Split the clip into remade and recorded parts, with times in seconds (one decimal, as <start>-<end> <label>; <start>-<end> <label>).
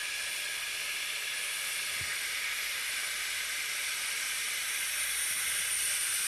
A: 0.0-6.3 recorded